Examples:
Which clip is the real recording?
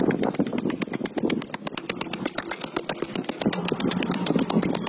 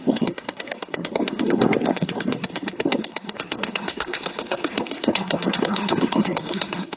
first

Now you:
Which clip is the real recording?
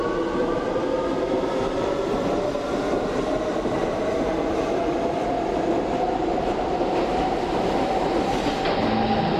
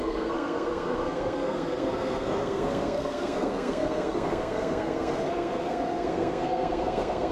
first